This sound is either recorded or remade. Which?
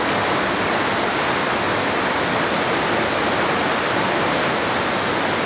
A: recorded